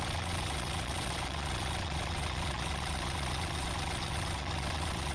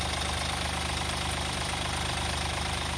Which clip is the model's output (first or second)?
first